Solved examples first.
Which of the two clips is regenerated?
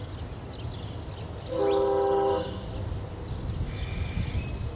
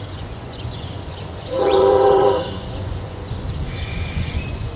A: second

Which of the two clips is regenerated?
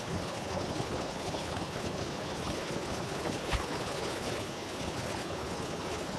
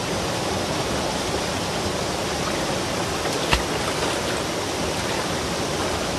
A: first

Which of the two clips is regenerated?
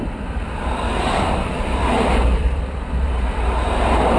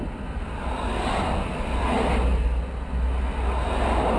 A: first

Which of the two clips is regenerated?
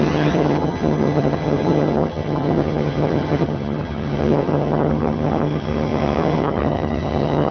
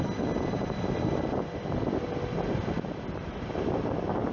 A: first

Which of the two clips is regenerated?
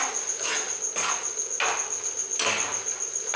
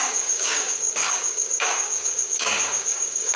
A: second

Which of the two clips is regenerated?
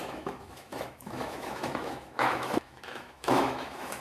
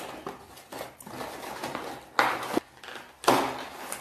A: first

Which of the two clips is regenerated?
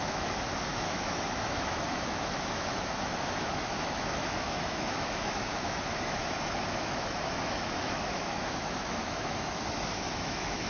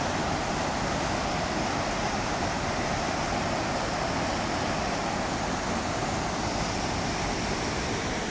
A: first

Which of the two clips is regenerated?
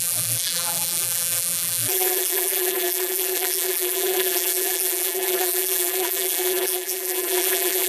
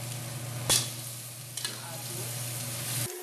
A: first